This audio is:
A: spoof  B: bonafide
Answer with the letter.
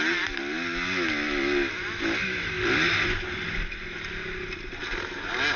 B